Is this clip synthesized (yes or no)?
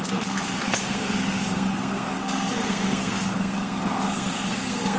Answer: yes